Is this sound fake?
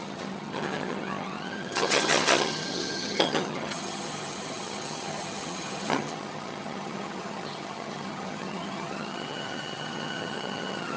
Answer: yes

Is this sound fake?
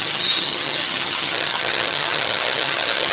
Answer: yes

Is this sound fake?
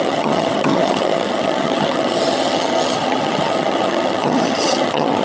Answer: yes